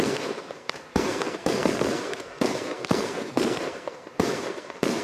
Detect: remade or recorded remade